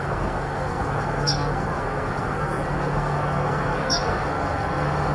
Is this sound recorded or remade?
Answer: remade